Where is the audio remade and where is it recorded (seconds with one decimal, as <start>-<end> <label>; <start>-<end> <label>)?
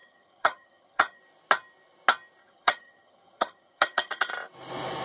0.0-1.2 remade; 1.2-2.4 recorded; 2.4-4.3 remade; 4.3-5.0 recorded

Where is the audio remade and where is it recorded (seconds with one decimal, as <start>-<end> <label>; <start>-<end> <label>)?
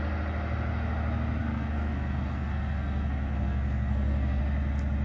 0.0-1.4 recorded; 1.4-4.4 remade; 4.4-5.0 recorded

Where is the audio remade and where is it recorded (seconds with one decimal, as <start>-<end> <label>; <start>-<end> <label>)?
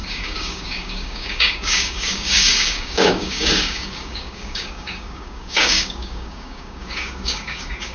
0.0-7.9 remade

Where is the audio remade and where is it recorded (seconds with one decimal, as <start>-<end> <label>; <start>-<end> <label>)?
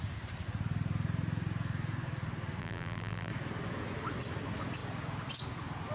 0.0-2.6 recorded; 2.6-3.3 remade; 3.3-5.9 recorded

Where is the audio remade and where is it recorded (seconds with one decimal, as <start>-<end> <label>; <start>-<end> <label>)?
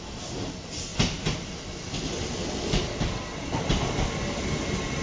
0.0-0.9 recorded; 0.9-1.6 remade; 1.6-5.0 recorded